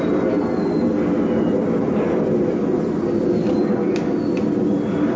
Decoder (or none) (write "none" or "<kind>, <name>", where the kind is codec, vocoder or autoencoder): none